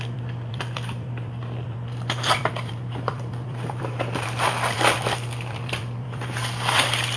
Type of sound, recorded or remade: remade